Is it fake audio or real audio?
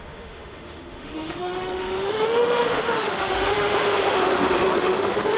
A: fake